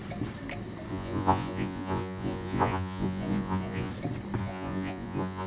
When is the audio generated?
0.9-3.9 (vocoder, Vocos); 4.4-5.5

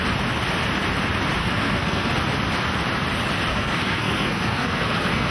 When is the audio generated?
1.4-2.1 (codec, SNAC); 3.5-5.3

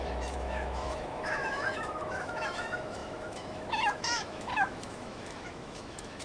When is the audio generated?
0.0-6.2 (autoencoder, DAC-VAE)